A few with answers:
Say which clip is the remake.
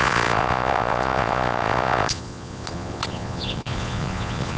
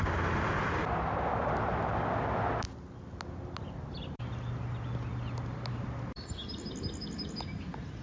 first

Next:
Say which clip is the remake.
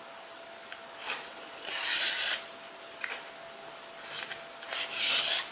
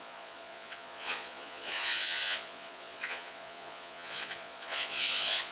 second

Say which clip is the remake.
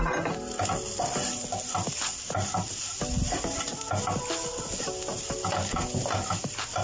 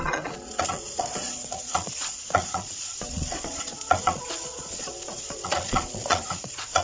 second